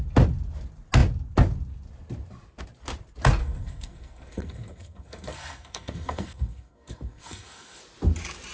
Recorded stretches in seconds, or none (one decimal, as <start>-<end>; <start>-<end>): 0.0-3.4; 7.8-8.5